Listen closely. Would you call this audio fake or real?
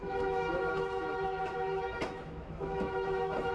fake